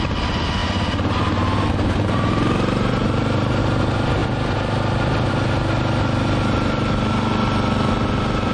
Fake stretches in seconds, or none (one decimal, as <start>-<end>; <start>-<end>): none